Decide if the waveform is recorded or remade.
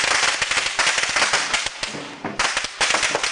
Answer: recorded